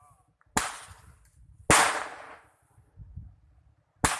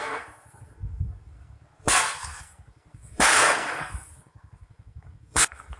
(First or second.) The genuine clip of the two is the first